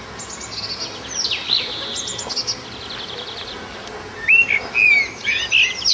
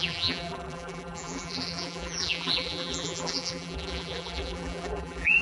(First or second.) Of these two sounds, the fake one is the second